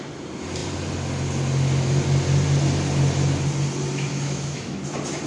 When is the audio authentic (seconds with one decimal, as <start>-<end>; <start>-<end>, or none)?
0.0-4.1; 4.8-5.3